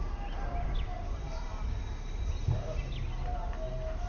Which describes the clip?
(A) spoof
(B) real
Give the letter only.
B